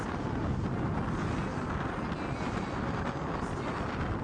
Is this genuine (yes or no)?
yes